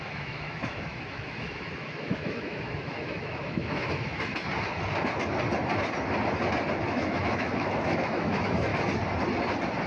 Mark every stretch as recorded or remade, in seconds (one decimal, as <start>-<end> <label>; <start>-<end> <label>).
0.0-4.3 remade; 4.3-6.9 recorded; 6.9-8.7 remade; 8.7-9.9 recorded